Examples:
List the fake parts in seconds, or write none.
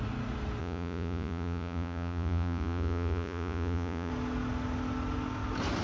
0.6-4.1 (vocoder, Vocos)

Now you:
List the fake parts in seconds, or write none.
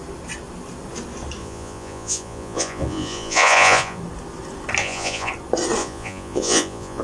1.4-4.0 (vocoder, Vocos); 4.8-5.3; 5.8-7.0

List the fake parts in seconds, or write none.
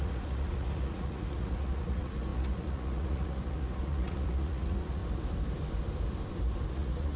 0.0-5.0 (vocoder, Vocos); 6.7-7.2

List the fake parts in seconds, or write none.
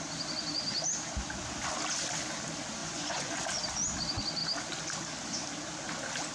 2.8-3.4 (vocoder, Vocos)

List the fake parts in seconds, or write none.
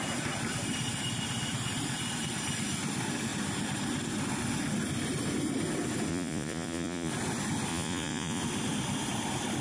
6.1-7.1 (vocoder, Vocos); 7.7-8.4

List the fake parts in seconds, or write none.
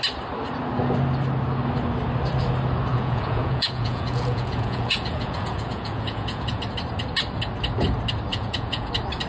2.9-6.6 (vocoder, Vocos); 8.3-8.9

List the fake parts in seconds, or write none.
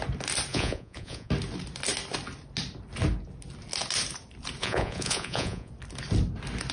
0.5-1.3 (vocoder, Vocos); 4.6-5.7